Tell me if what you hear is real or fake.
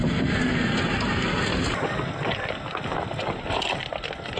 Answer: real